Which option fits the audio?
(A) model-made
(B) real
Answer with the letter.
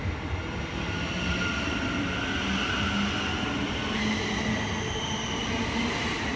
B